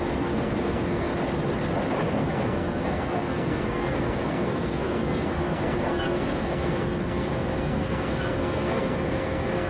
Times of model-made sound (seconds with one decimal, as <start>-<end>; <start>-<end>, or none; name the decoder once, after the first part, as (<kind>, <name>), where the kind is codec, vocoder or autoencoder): 0.0-1.1 (codec, SNAC); 2.1-9.7